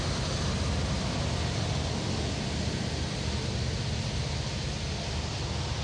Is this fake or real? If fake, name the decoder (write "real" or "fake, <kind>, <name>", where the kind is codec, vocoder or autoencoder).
real